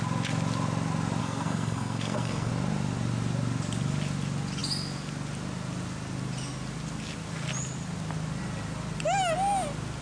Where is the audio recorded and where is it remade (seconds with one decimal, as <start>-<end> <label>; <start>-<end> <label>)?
0.0-1.2 recorded; 1.2-2.5 remade; 2.5-10.0 recorded